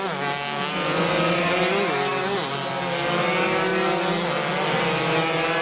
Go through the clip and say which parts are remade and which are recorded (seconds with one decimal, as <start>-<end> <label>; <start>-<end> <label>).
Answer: 0.0-0.7 recorded; 0.7-1.6 remade; 1.6-5.6 recorded